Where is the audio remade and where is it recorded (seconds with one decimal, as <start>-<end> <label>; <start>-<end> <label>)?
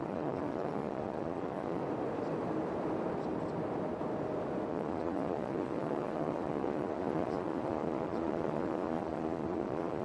0.0-1.8 remade; 1.8-4.7 recorded; 4.7-10.0 remade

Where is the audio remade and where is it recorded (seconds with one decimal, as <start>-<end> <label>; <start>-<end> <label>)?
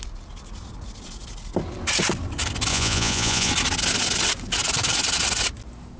0.0-2.7 recorded; 2.7-3.5 remade; 3.5-6.0 recorded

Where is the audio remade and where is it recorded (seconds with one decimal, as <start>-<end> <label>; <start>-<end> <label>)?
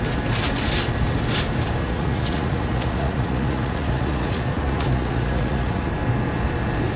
0.0-1.8 recorded; 1.8-5.9 remade; 5.9-7.0 recorded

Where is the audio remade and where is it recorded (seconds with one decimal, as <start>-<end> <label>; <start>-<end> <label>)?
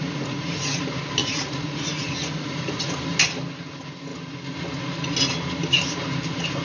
0.0-0.6 remade; 0.6-1.2 recorded; 1.2-2.9 remade; 2.9-6.6 recorded